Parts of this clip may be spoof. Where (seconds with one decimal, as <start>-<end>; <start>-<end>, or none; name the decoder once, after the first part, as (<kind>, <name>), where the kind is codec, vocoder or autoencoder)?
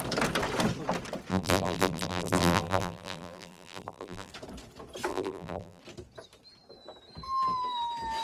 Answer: 1.3-4.3 (vocoder, BigVGAN v2); 5.1-5.8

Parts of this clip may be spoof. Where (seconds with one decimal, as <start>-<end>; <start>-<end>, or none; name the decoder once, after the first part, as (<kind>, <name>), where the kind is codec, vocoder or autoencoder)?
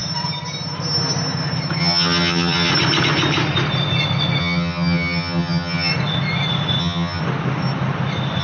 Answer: 1.8-2.7 (vocoder, HiFi-GAN); 4.4-5.9; 6.8-7.2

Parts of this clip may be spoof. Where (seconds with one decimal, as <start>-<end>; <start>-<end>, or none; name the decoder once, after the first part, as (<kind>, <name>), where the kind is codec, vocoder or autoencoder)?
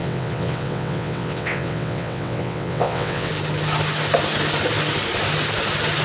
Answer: 0.0-3.3 (vocoder, WaveNeXt)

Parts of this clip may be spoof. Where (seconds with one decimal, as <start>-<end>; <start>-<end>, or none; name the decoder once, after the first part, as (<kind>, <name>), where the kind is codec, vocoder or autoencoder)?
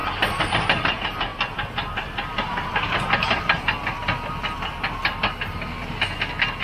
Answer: 0.0-0.5 (vocoder, BigVGAN v2); 1.3-5.3